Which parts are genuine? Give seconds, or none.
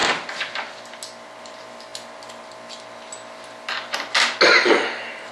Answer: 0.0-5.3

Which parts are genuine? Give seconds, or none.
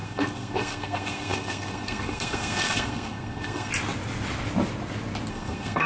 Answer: 3.7-5.3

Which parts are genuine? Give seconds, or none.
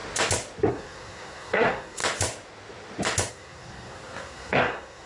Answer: 0.0-0.7; 2.0-3.3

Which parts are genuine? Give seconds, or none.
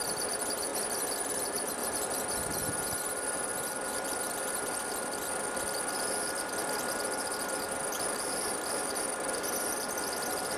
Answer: 0.0-10.6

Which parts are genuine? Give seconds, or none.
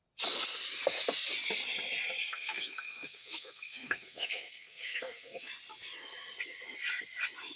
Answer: 0.0-2.3; 5.5-7.6